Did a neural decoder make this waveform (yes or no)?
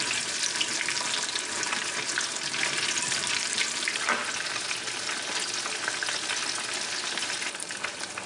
no